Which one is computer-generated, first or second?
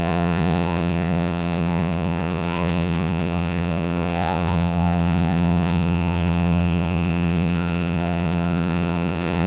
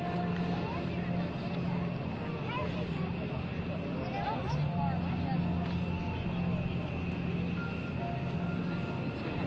first